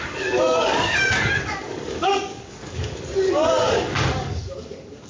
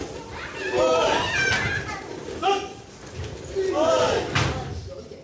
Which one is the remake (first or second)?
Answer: first